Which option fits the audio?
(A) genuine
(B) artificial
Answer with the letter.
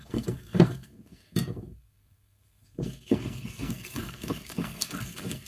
B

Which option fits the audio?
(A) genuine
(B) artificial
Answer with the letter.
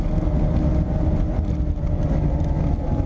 A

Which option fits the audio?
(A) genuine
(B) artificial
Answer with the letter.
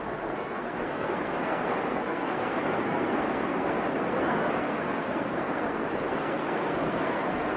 B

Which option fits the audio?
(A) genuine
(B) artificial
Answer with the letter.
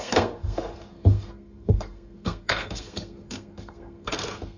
B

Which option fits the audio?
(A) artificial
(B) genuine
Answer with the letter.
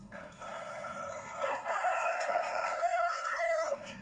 A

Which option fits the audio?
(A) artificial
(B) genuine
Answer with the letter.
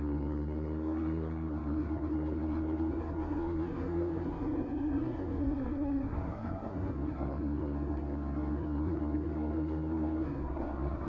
A